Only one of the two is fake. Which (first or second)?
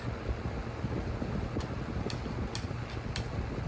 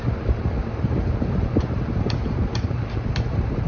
second